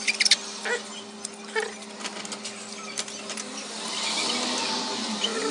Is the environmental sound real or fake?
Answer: real